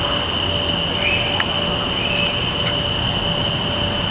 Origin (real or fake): real